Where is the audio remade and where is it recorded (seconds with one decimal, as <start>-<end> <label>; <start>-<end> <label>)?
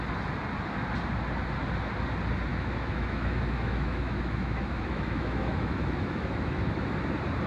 0.0-2.5 recorded; 2.5-6.9 remade; 6.9-7.5 recorded